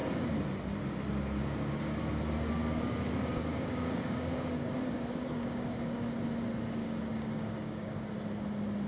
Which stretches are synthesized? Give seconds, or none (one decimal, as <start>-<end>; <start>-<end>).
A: 1.4-2.0; 2.6-6.1; 6.8-8.0